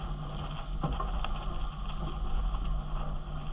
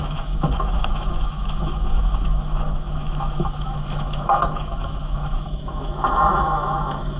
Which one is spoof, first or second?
second